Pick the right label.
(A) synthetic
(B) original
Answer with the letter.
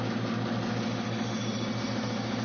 B